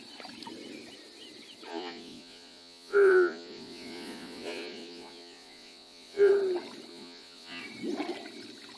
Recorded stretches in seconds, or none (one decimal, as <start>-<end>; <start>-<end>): 0.0-1.7; 6.3-6.9; 7.6-8.8